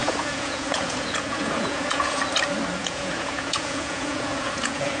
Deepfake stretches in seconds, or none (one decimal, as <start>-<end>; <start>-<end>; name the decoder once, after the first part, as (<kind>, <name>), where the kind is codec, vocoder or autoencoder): 0.0-2.2 (vocoder, Vocos); 2.8-5.0